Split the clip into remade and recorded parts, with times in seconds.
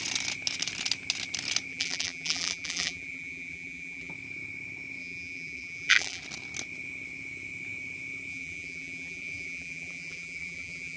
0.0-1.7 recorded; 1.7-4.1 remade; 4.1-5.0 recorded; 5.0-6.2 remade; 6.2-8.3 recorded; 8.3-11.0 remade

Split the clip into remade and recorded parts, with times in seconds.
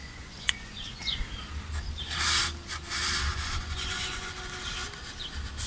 0.0-1.2 remade; 1.2-3.3 recorded; 3.3-4.4 remade; 4.4-5.7 recorded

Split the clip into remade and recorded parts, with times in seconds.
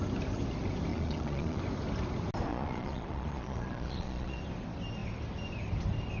0.0-0.9 recorded; 0.9-1.6 remade; 1.6-2.5 recorded; 2.5-4.4 remade; 4.4-6.2 recorded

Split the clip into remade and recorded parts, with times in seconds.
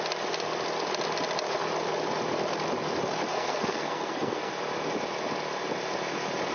0.0-3.3 recorded; 3.3-4.5 remade; 4.5-6.5 recorded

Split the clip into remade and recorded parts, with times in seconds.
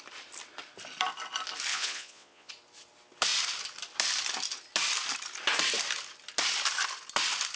0.0-1.7 recorded; 1.7-2.5 remade; 2.5-7.6 recorded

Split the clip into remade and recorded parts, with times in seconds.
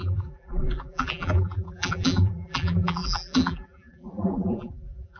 0.0-5.2 remade